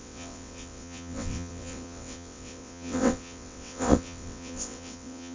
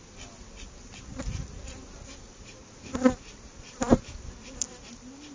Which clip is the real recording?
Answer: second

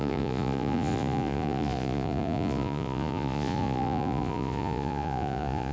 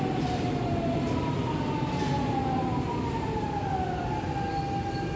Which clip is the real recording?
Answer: second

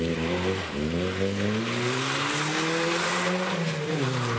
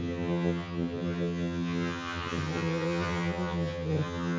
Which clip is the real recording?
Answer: first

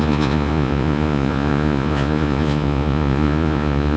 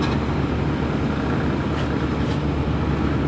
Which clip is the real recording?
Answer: second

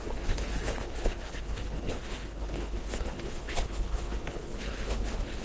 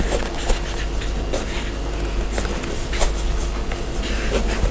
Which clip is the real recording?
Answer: second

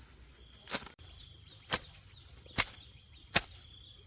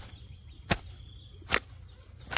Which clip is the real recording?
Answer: second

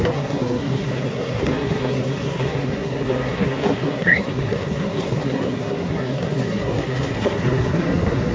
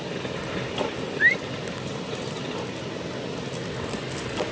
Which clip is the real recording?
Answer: second